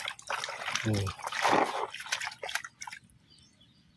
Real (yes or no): yes